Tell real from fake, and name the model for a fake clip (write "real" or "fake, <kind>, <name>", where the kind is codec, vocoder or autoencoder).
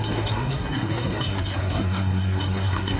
fake, codec, SNAC